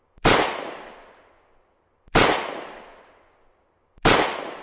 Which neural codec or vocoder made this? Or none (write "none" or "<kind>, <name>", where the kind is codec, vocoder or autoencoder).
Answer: none